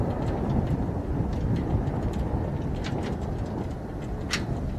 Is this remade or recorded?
recorded